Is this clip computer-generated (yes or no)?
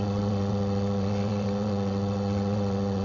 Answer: yes